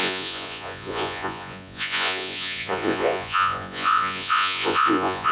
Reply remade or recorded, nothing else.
remade